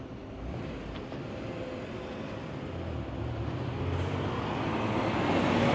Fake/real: real